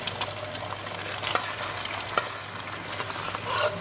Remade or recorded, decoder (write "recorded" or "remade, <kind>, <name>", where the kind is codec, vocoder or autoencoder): recorded